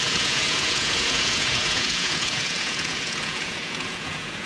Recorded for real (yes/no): no